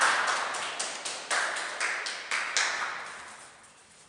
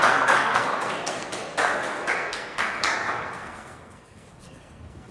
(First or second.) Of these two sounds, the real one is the first